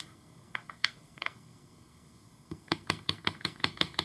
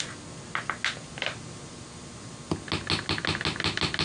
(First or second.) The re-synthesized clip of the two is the first